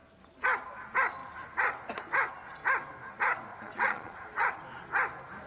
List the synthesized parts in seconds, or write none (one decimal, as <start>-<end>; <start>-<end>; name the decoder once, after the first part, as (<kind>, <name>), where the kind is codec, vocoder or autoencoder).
3.5-4.6 (vocoder, Vocos)